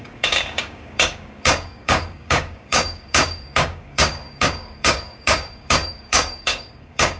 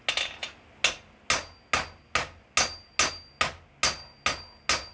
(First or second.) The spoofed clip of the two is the first